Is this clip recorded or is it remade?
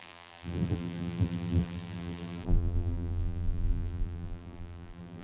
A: remade